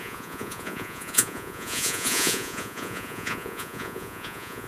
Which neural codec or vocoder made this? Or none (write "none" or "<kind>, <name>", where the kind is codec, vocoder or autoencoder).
vocoder, Vocos